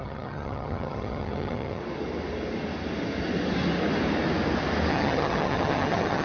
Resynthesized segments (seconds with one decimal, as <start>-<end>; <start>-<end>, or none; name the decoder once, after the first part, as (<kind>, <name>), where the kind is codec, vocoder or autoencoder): 0.0-1.8 (vocoder, HiFi-GAN); 4.9-6.2